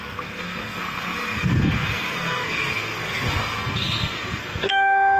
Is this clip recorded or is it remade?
remade